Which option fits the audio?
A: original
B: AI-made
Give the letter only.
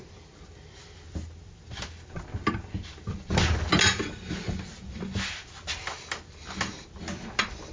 A